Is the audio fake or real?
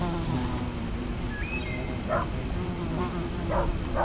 real